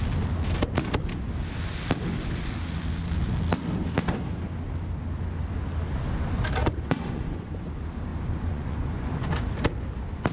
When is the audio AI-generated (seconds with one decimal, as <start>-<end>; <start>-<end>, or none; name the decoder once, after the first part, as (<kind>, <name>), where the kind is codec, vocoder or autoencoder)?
6.6-7.6 (vocoder, Vocos); 8.1-9.3